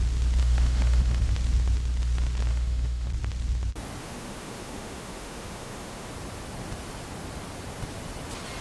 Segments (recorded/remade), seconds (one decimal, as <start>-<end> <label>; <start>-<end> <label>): 0.0-0.4 recorded; 0.4-1.3 remade; 1.3-2.5 recorded; 2.5-3.1 remade; 3.1-4.0 recorded; 4.0-6.1 remade; 6.1-8.6 recorded